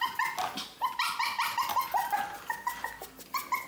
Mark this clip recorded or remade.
recorded